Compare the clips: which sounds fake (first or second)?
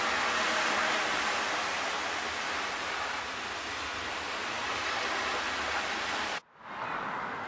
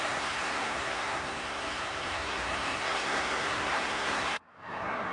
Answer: second